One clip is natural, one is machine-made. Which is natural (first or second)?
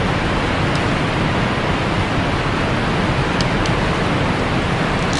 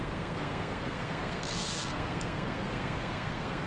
first